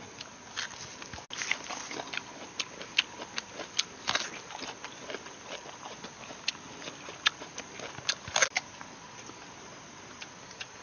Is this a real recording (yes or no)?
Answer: yes